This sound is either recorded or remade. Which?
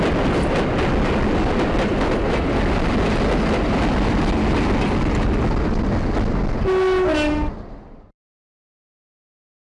recorded